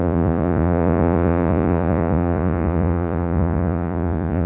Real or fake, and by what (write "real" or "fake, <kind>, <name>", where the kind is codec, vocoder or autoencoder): fake, vocoder, Vocos